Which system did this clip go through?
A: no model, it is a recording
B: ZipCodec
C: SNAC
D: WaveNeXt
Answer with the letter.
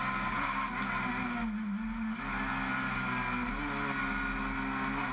A